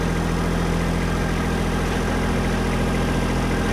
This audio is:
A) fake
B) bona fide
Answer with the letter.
B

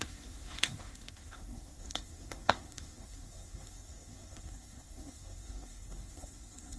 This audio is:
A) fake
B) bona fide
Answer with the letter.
A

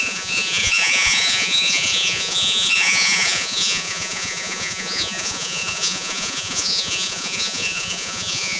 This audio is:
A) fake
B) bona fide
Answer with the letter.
A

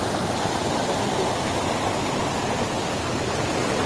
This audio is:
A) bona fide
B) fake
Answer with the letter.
A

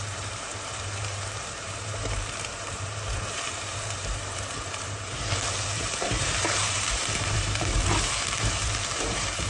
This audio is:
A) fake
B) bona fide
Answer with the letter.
A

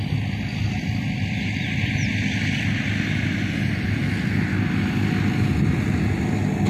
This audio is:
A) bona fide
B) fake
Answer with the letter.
A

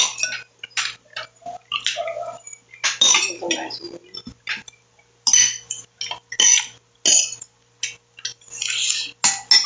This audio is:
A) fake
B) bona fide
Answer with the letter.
B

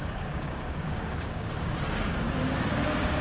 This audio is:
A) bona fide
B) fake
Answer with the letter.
B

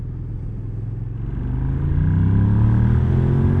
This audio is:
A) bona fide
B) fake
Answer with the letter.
A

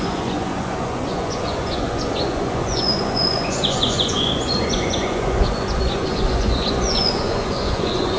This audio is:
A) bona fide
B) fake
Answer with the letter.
B